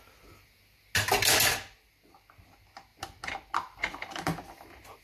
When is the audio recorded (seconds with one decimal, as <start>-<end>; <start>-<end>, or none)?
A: 0.0-5.0